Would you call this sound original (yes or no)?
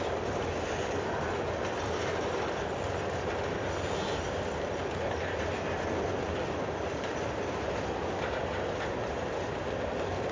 yes